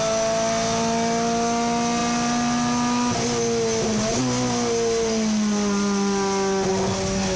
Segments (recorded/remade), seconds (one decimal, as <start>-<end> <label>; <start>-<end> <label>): 0.0-7.4 recorded